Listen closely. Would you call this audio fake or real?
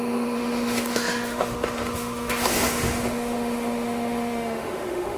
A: fake